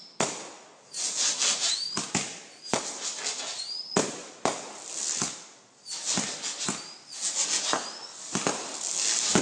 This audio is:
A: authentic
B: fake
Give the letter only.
A